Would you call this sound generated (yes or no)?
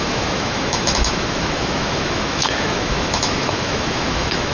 yes